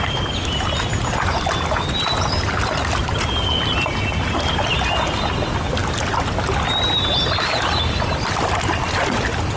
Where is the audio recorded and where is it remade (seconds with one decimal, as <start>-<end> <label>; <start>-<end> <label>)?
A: 0.0-9.6 recorded